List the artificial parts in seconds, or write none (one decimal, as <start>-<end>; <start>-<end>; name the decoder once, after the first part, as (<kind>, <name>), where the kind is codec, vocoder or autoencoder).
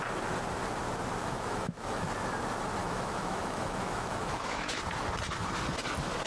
1.2-2.1 (autoencoder, DAC-VAE); 2.8-4.8